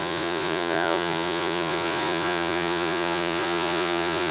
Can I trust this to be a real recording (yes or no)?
no